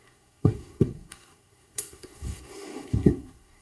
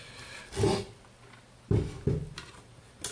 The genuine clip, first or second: second